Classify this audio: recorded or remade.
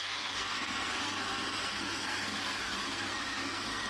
remade